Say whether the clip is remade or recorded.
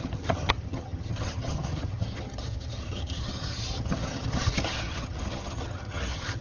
remade